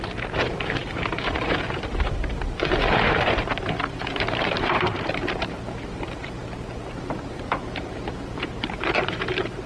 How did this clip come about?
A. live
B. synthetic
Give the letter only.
B